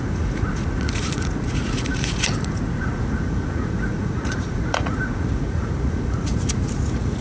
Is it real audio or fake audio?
fake